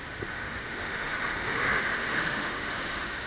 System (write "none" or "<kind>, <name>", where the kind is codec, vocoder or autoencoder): autoencoder, DAC-VAE